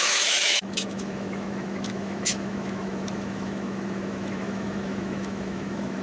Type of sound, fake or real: fake